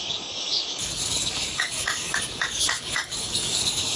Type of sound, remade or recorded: remade